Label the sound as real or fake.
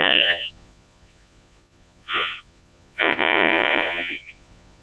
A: fake